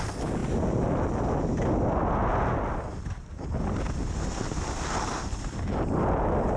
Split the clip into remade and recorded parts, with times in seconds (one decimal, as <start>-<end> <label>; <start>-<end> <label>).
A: 0.0-6.6 recorded